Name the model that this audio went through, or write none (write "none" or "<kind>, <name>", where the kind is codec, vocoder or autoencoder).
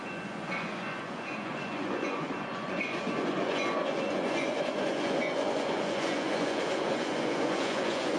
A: vocoder, Vocos